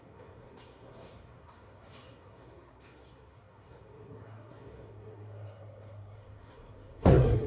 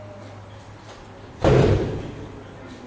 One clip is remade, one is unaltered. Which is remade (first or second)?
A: first